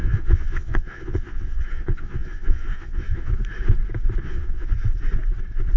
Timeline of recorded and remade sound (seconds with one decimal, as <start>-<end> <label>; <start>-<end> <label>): 0.0-3.3 remade; 3.3-4.2 recorded; 4.2-4.7 remade; 4.7-5.8 recorded

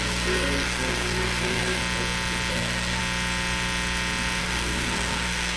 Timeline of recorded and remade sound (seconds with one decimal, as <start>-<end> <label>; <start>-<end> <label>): 0.0-1.8 remade; 1.8-2.5 recorded; 2.5-3.0 remade; 3.0-4.4 recorded; 4.4-5.6 remade

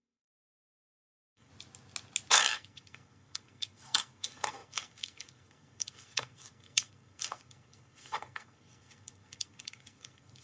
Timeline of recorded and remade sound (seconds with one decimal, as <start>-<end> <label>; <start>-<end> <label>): 0.0-1.5 remade; 1.5-2.3 recorded; 2.3-10.4 remade

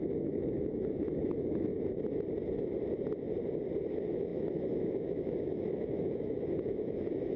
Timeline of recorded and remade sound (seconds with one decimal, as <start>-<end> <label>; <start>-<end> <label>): 0.0-1.7 remade; 1.7-3.9 recorded; 3.9-7.4 remade

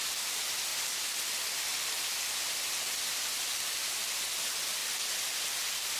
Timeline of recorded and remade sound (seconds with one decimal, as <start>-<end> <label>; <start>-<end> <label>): 0.0-6.0 recorded